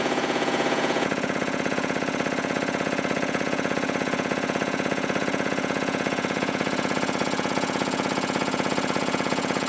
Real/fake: fake